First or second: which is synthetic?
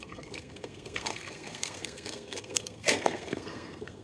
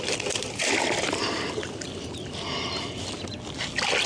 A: first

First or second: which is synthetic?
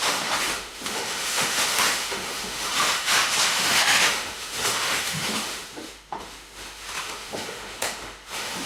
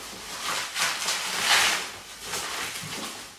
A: first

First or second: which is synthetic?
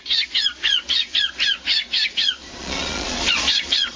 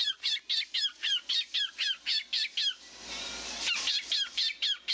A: first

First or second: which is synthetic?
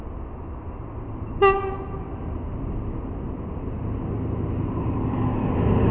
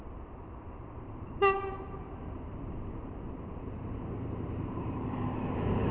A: second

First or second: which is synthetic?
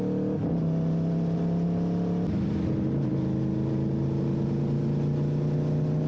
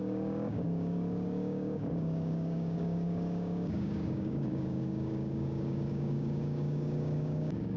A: second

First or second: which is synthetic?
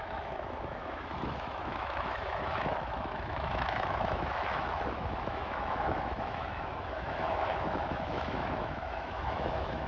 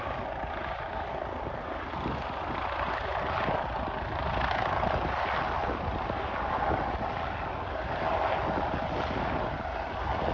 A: first